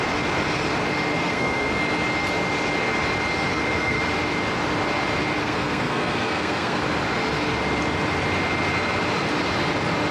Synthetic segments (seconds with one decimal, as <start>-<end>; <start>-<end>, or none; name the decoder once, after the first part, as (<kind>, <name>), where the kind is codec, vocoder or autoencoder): 1.2-1.8 (codec, SNAC); 3.5-4.0; 5.4-6.8

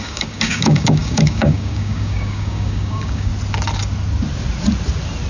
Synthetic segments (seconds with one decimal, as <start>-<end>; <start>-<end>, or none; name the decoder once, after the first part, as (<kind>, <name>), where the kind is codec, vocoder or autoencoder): 0.0-3.3 (codec, DAC)

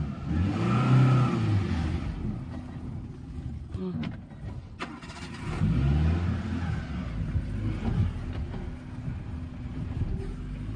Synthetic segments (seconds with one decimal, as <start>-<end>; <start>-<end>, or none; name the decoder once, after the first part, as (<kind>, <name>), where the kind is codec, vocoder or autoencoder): 4.6-5.1 (vocoder, WaveNeXt)

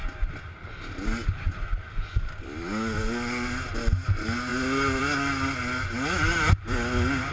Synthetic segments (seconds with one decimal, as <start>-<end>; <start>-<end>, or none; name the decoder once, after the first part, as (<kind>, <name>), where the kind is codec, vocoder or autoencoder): none

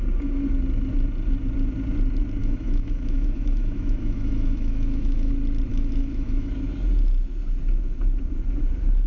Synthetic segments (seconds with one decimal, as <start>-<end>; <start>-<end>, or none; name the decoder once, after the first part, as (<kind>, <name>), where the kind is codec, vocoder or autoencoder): 2.4-5.3 (autoencoder, DAC-VAE); 5.7-6.5

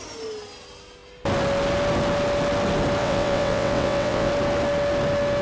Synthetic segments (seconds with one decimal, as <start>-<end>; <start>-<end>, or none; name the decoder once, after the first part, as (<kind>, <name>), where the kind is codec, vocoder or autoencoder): 3.0-4.3 (vocoder, WaveNeXt)

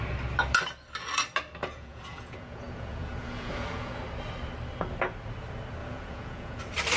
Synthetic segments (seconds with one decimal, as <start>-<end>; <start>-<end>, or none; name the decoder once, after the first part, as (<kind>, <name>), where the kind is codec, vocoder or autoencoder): 1.6-4.0 (vocoder, Vocos); 5.8-6.6

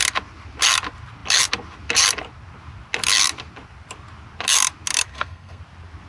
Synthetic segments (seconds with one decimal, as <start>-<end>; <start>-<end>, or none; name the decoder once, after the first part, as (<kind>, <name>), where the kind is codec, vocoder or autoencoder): 5.1-5.6 (codec, SNAC)